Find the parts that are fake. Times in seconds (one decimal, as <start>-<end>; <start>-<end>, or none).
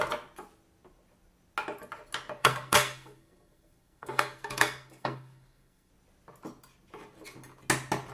2.4-5.9